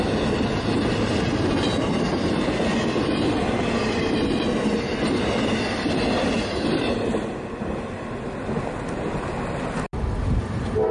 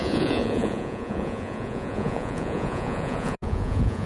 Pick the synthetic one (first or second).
second